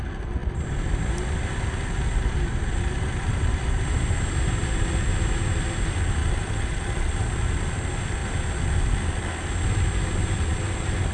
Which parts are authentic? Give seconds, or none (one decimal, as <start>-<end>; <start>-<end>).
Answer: 0.0-2.7; 3.7-6.2; 7.1-11.1